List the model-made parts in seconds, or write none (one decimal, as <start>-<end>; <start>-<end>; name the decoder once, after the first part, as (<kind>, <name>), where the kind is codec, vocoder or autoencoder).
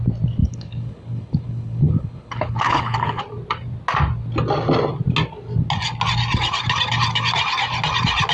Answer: 0.4-3.2 (codec, HILCodec)